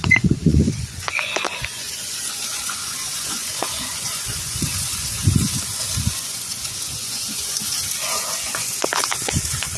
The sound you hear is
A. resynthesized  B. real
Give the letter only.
A